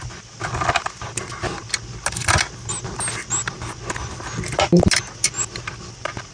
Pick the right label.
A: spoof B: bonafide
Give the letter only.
B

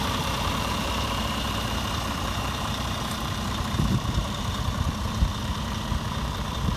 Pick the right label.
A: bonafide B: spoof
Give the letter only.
B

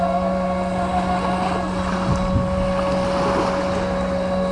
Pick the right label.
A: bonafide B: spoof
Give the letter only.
A